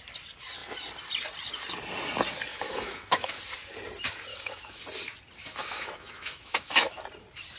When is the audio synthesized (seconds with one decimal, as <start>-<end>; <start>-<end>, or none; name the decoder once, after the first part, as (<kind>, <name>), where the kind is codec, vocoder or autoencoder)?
2.5-3.3 (autoencoder, DAC-VAE); 4.3-4.8; 5.4-7.0